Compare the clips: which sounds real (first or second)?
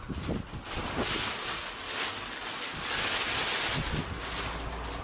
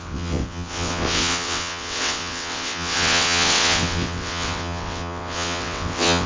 first